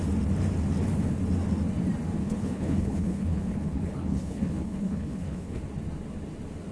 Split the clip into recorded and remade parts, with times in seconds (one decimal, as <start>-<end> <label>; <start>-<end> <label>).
0.0-2.2 recorded; 2.2-5.6 remade; 5.6-6.7 recorded